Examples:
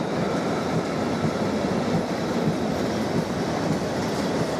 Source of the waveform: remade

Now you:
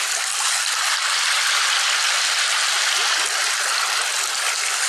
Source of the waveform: recorded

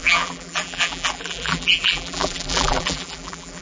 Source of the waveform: remade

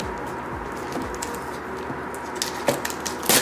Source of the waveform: recorded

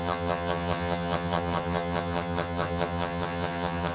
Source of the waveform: remade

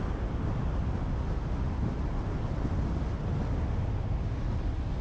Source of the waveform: recorded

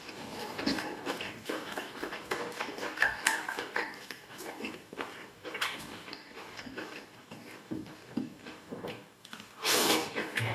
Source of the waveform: remade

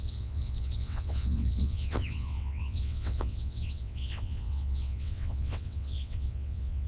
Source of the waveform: remade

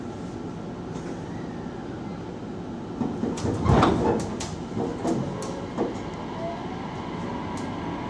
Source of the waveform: recorded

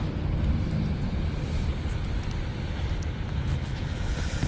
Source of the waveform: recorded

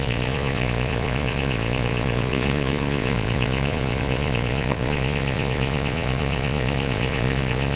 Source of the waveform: remade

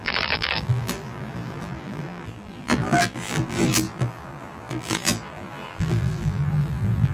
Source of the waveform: remade